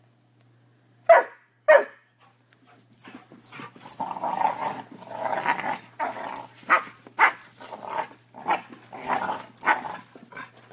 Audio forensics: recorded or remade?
recorded